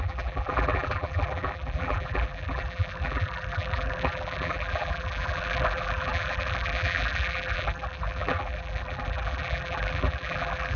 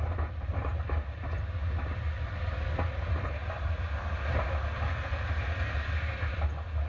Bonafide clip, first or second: second